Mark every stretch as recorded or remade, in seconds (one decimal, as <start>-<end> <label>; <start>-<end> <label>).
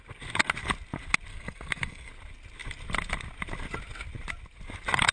0.0-1.3 recorded; 1.3-2.1 remade; 2.1-5.1 recorded